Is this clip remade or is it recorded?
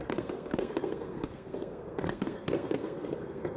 remade